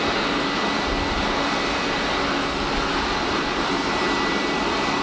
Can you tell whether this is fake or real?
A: real